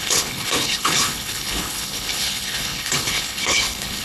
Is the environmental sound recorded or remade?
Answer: remade